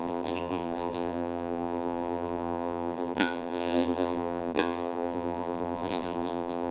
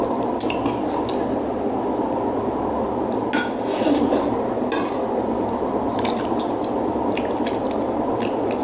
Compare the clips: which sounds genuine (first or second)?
second